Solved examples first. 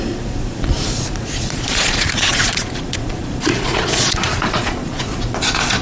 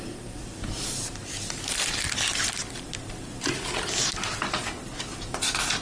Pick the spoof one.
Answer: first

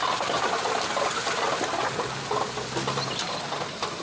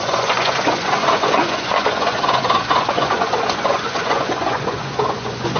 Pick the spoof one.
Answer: second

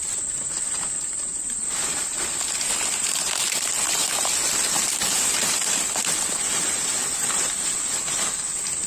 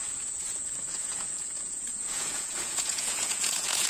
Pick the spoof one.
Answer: second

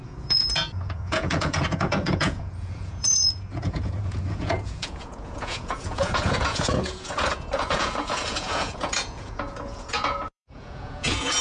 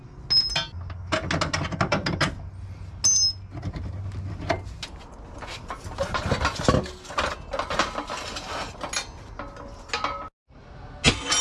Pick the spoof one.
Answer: first